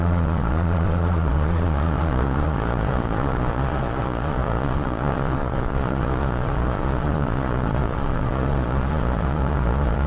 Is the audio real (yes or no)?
no